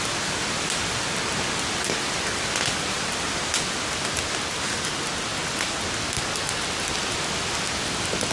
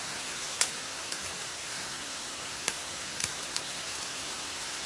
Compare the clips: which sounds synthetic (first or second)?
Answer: second